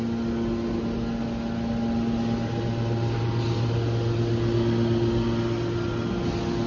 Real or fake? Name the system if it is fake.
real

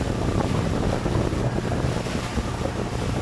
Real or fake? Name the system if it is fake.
fake, vocoder, BigVGAN v2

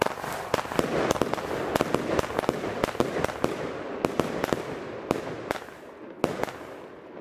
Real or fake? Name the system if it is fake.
real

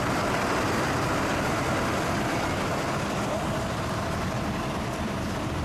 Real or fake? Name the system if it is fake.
fake, vocoder, BigVGAN v2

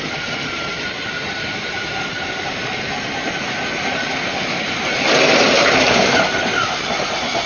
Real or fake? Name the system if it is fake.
fake, vocoder, BigVGAN v2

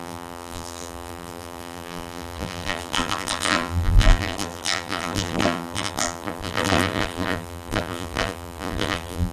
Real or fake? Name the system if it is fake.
fake, vocoder, BigVGAN v2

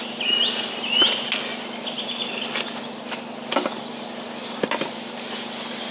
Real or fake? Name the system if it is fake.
real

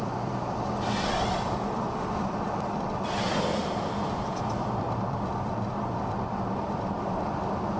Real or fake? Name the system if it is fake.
fake, vocoder, BigVGAN v2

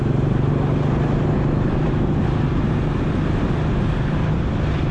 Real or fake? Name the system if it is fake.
real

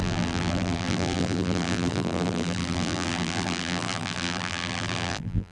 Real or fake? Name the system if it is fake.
fake, vocoder, BigVGAN v2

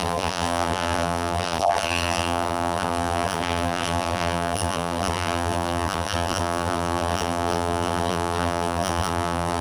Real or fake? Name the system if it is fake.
fake, vocoder, BigVGAN v2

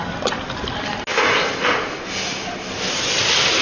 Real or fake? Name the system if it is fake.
real